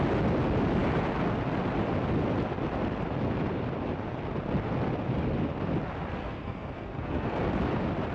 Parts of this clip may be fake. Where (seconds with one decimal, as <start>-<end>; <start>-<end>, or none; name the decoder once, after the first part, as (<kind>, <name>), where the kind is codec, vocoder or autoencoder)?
6.2-7.5 (codec, SNAC)